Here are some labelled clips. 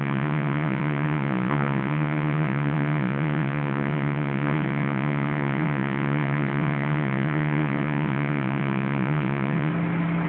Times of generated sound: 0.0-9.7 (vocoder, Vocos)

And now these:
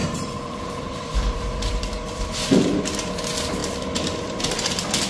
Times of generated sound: 0.0-3.1 (vocoder, BigVGAN v2); 3.6-4.4